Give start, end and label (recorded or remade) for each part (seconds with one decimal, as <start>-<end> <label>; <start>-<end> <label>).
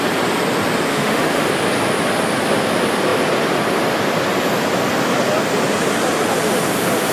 0.0-0.9 recorded; 0.9-1.5 remade; 1.5-7.1 recorded